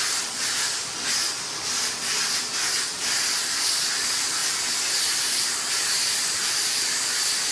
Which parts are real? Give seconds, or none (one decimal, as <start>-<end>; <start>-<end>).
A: 0.0-7.5